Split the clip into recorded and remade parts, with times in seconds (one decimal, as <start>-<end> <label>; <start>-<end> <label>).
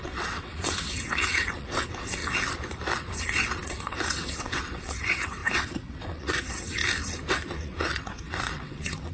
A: 0.0-2.2 remade; 2.2-3.0 recorded; 3.0-6.8 remade; 6.8-7.3 recorded; 7.3-9.1 remade